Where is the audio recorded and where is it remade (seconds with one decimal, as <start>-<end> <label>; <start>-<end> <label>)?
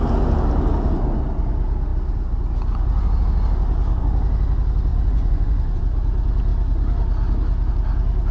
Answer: 0.0-4.9 recorded; 4.9-5.8 remade; 5.8-8.3 recorded